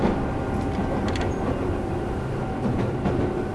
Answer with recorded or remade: recorded